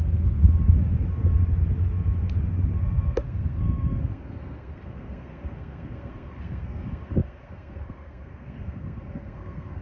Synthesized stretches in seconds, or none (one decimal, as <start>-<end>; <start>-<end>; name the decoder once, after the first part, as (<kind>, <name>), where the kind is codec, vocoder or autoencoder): 0.0-0.4 (codec, SNAC); 2.8-9.8